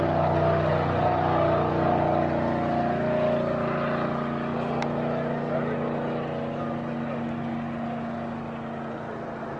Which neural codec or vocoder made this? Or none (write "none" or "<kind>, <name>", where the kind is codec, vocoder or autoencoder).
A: none